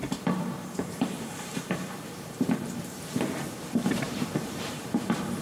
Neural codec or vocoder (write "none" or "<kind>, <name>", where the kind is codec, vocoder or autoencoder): vocoder, BigVGAN v2